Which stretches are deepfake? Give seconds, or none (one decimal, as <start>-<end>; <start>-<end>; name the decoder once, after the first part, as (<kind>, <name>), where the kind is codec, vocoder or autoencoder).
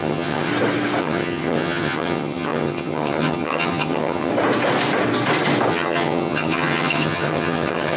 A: 0.0-0.5 (vocoder, HiFi-GAN); 1.0-4.3; 5.7-8.0